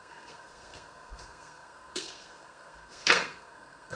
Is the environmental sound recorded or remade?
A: remade